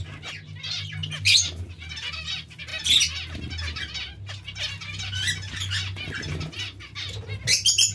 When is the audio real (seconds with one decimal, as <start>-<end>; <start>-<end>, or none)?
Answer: 0.0-7.9